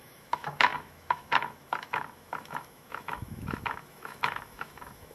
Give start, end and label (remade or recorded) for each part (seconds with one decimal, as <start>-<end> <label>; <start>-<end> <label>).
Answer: 0.0-5.1 remade